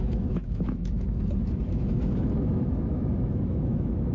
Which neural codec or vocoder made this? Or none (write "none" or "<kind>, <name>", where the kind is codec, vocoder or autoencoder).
autoencoder, DAC-VAE